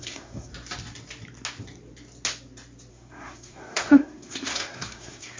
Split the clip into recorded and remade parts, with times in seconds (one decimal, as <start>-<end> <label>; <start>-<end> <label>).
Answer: 0.0-0.5 remade; 0.5-2.9 recorded; 2.9-5.4 remade